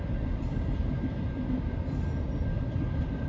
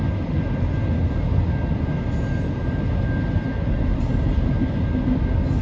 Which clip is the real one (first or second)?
second